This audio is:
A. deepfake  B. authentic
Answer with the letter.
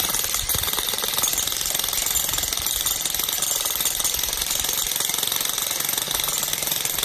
A